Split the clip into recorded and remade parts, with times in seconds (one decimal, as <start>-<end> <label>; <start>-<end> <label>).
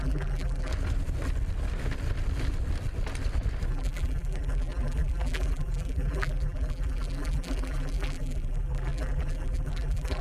0.0-0.7 remade; 0.7-3.7 recorded; 3.7-10.2 remade